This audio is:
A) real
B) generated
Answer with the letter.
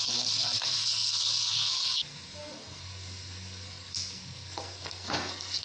B